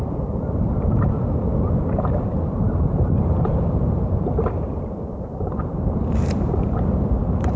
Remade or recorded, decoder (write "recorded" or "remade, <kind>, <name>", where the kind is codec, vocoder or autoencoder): remade, vocoder, BigVGAN v2